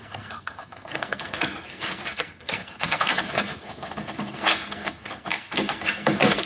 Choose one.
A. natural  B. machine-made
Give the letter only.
B